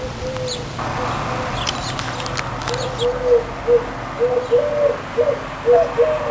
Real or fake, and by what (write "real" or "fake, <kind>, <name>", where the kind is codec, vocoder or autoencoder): real